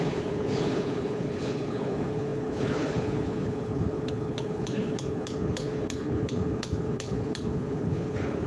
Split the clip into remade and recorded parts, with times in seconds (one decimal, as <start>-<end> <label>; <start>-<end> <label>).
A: 0.0-8.5 remade